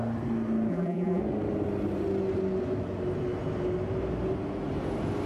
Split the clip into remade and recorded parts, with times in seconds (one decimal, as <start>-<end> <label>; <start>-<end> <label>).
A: 0.0-0.7 recorded; 0.7-1.2 remade; 1.2-5.3 recorded